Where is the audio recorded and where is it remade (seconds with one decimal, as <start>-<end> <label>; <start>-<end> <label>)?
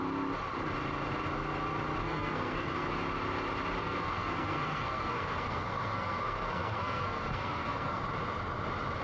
0.0-2.0 recorded; 2.0-2.9 remade; 2.9-3.8 recorded; 3.8-8.0 remade; 8.0-9.0 recorded